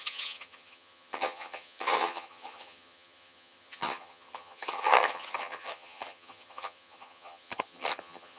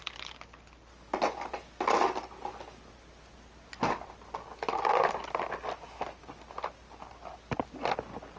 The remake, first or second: first